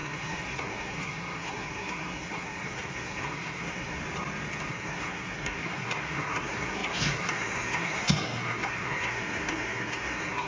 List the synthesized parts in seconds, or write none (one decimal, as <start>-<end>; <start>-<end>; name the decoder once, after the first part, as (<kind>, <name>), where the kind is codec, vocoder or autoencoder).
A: 0.0-4.0 (codec, SNAC); 4.7-10.5